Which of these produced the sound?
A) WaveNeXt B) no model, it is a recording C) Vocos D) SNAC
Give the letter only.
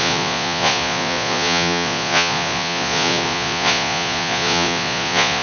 C